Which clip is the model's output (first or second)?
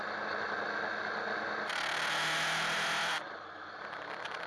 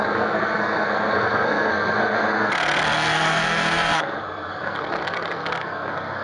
second